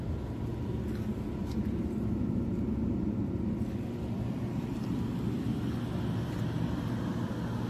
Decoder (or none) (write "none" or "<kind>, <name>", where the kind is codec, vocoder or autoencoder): none